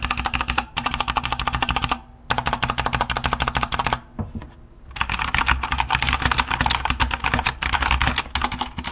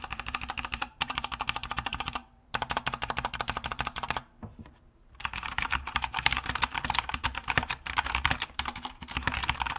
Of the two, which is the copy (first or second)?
second